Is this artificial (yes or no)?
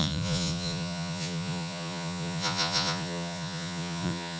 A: yes